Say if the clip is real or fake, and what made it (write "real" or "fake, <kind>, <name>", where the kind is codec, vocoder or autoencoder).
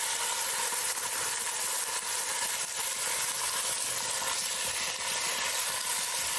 real